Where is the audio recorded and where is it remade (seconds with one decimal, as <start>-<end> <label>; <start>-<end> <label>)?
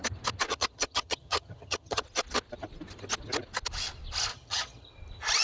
0.0-0.5 recorded; 0.5-2.0 remade; 2.0-4.3 recorded; 4.3-4.9 remade; 4.9-5.4 recorded